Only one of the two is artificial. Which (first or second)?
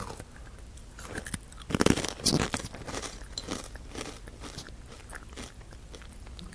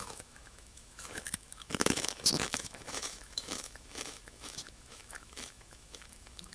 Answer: second